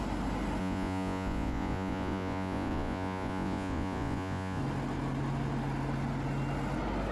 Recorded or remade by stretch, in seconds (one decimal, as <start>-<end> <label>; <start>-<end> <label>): 0.0-0.6 recorded; 0.6-4.6 remade; 4.6-7.1 recorded